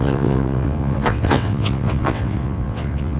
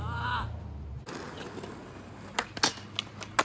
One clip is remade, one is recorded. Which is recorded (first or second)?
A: second